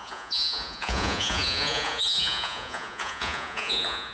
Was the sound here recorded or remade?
remade